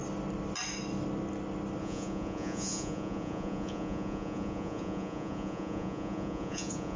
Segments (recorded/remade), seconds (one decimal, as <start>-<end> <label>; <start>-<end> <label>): 0.0-1.8 recorded; 1.8-7.0 remade